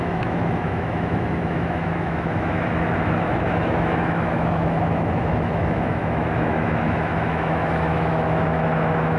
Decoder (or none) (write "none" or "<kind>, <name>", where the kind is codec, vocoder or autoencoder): autoencoder, DAC-VAE